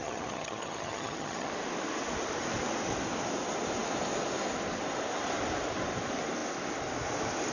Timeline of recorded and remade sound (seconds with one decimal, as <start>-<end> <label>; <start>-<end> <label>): 0.0-1.5 remade; 1.5-7.5 recorded